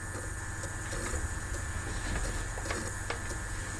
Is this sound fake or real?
real